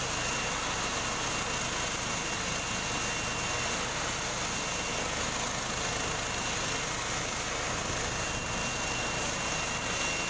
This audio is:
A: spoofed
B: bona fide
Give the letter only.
B